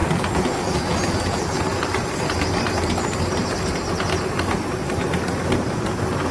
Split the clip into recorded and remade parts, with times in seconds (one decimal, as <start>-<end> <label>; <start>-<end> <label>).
0.0-1.6 remade; 1.6-6.3 recorded